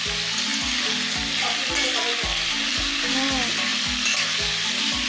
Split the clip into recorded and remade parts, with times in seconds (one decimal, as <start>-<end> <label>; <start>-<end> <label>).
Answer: 0.0-3.7 recorded; 3.7-4.5 remade; 4.5-5.1 recorded